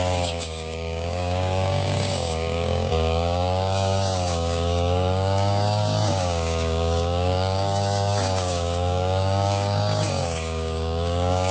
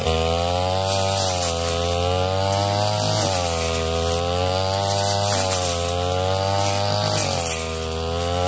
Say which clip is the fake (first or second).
first